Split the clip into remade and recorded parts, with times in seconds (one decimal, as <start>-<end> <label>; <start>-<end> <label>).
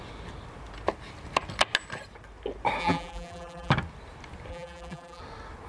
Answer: 0.0-2.8 recorded; 2.8-3.7 remade; 3.7-4.5 recorded; 4.5-5.2 remade; 5.2-5.7 recorded